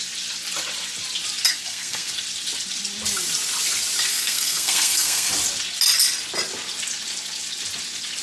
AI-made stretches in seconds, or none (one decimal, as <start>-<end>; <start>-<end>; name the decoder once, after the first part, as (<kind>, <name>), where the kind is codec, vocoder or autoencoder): 1.5-2.1 (codec, SNAC); 4.1-5.3